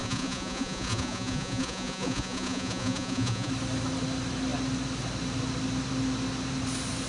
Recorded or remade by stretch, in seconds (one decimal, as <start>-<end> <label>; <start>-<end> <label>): 0.0-3.5 remade; 3.5-7.1 recorded